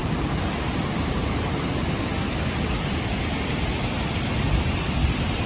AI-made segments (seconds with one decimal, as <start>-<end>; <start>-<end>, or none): 1.0-2.1